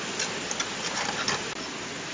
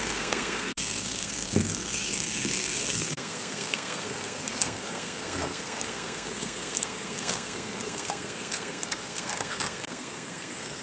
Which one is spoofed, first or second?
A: second